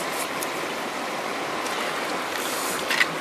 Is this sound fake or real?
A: real